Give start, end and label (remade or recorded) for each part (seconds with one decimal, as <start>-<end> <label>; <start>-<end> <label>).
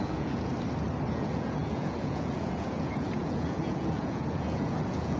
0.0-0.5 remade; 0.5-1.1 recorded; 1.1-5.2 remade